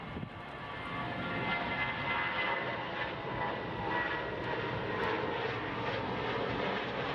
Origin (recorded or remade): recorded